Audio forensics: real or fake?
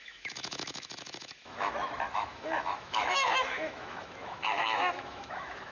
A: fake